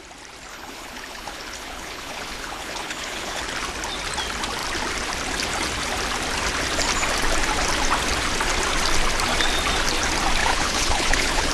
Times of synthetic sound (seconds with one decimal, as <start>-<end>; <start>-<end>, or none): 0.5-3.4; 10.4-11.5